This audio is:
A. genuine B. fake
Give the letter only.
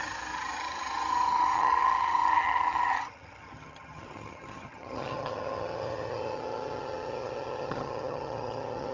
B